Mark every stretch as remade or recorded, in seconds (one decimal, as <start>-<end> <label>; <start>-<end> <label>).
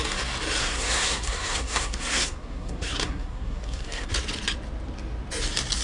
0.0-0.6 recorded; 0.6-4.1 remade; 4.1-5.8 recorded